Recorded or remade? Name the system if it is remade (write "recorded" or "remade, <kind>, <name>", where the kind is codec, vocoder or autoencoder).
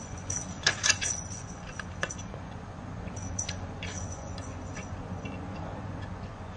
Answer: remade, vocoder, Vocos